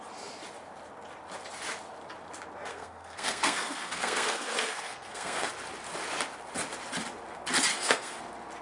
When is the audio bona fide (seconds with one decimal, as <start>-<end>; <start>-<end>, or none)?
0.0-2.7; 5.5-7.7; 8.2-8.6